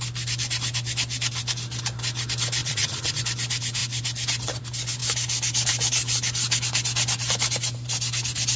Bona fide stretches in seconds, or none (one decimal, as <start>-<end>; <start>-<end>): 0.0-2.6; 3.2-8.6